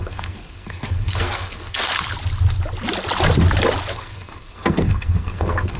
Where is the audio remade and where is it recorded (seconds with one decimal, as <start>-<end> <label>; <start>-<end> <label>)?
0.0-1.9 remade; 1.9-3.9 recorded; 3.9-5.8 remade